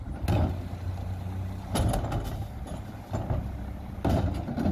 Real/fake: real